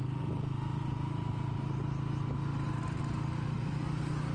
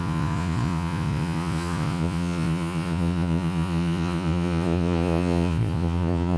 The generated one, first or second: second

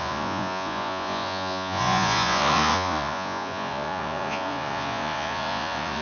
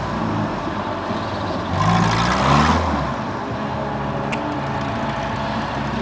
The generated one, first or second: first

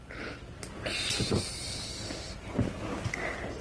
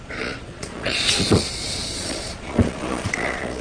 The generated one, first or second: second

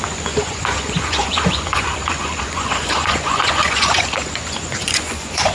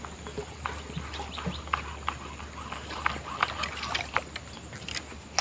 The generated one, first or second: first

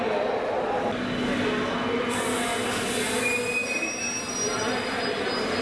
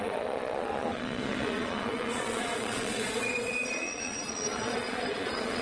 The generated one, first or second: second